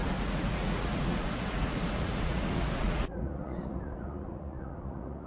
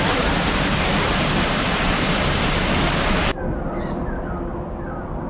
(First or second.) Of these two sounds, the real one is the second